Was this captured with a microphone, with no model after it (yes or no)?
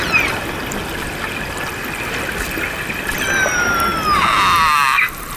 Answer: yes